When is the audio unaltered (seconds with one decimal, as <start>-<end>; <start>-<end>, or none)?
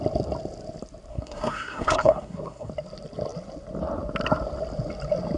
0.0-1.1; 2.7-5.4